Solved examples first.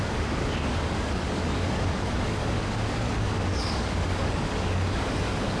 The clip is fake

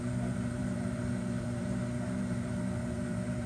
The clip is fake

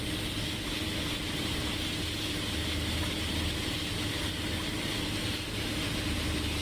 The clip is real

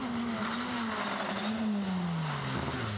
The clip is real